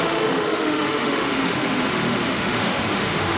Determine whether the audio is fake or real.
fake